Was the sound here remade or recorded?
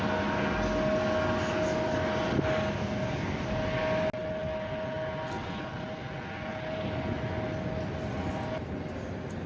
recorded